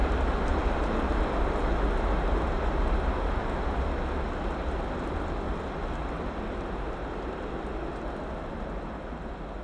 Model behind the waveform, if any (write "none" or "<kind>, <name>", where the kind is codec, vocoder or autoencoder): none